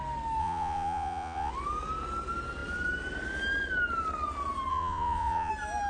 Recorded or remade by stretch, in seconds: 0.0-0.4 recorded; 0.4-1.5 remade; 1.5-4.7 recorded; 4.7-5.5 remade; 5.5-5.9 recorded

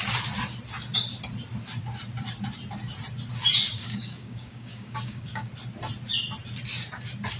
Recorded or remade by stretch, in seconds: 0.0-3.7 recorded; 3.7-5.5 remade; 5.5-7.4 recorded